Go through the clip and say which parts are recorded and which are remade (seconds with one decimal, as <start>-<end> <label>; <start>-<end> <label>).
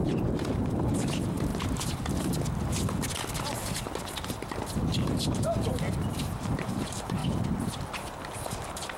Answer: 0.0-1.5 remade; 1.5-5.2 recorded; 5.2-5.7 remade; 5.7-6.2 recorded; 6.2-7.2 remade; 7.2-8.0 recorded; 8.0-9.0 remade